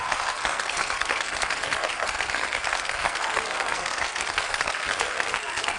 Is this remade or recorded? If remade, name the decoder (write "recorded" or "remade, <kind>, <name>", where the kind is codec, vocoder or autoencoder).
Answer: remade, codec, SNAC